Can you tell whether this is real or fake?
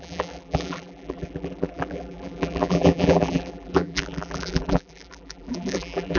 fake